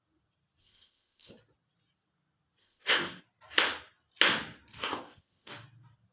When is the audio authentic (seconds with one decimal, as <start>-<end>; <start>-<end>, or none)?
0.0-0.6; 1.3-2.6; 3.2-4.7; 5.5-6.1